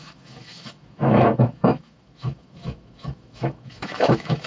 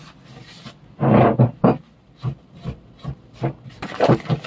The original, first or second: second